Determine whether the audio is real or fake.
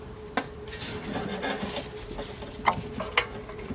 real